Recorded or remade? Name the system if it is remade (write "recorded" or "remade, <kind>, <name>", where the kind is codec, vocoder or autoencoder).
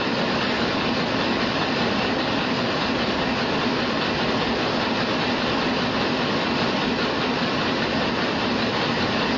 recorded